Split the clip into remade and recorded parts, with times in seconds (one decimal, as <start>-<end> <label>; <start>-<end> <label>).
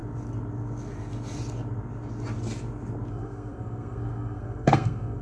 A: 0.0-3.1 recorded; 3.1-5.2 remade